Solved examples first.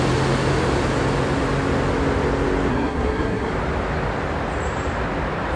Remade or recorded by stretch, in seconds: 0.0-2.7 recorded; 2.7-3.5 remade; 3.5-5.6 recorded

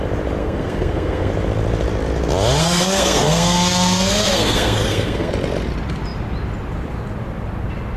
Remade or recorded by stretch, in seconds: 0.0-0.4 recorded; 0.4-1.3 remade; 1.3-2.6 recorded; 2.6-5.3 remade; 5.3-8.0 recorded

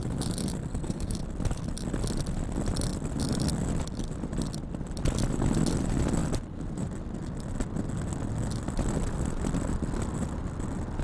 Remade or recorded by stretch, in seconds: 0.0-0.7 recorded; 0.7-1.2 remade; 1.2-11.0 recorded

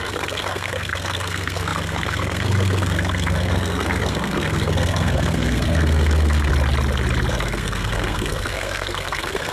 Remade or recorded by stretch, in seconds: 0.0-6.5 remade; 6.5-7.3 recorded; 7.3-9.5 remade

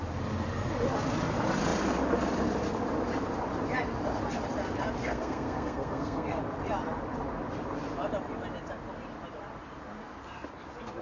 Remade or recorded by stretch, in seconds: 0.0-5.0 recorded; 5.0-6.4 remade; 6.4-11.0 recorded

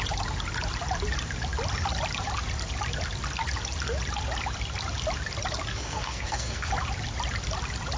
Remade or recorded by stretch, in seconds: 0.0-5.7 recorded; 5.7-6.7 remade; 6.7-8.0 recorded